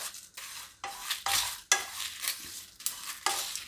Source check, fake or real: real